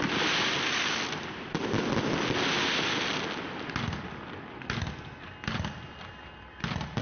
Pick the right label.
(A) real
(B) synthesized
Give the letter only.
A